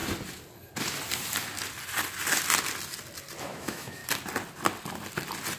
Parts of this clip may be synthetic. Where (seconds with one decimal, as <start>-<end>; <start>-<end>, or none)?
3.4-4.0